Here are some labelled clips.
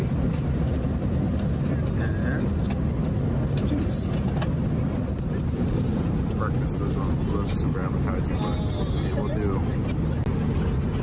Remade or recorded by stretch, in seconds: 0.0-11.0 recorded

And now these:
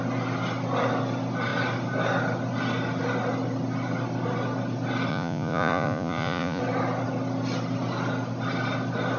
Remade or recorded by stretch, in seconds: 0.0-5.1 recorded; 5.1-6.6 remade; 6.6-9.2 recorded

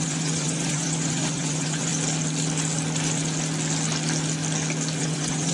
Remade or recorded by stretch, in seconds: 0.0-1.9 remade; 1.9-5.0 recorded; 5.0-5.5 remade

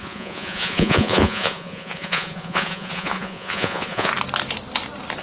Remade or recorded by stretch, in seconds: 0.0-4.1 remade; 4.1-5.2 recorded

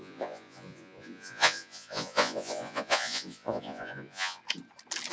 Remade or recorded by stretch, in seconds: 0.0-4.4 remade; 4.4-5.1 recorded

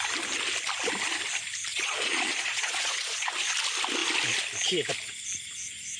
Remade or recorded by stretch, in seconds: 0.0-1.7 recorded; 1.7-3.3 remade; 3.3-6.0 recorded

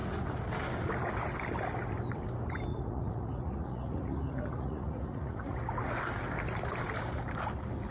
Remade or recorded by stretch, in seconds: 0.0-2.7 recorded; 2.7-5.6 remade; 5.6-7.9 recorded

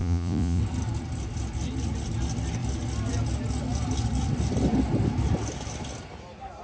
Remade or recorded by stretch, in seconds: 0.0-0.6 remade; 0.6-6.6 recorded